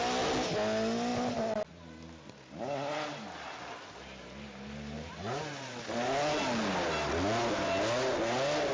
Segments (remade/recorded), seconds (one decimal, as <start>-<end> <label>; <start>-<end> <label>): 0.0-8.7 recorded